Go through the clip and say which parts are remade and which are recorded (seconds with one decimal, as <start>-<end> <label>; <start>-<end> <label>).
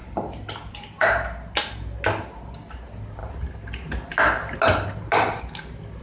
0.0-6.0 recorded